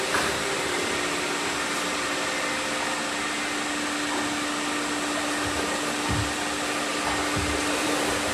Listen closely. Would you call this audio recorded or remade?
recorded